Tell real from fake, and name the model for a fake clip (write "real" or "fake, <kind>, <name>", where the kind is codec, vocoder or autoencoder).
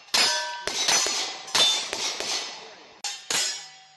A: real